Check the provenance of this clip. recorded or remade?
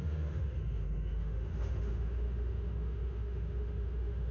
remade